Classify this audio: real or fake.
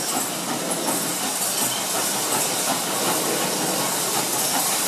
real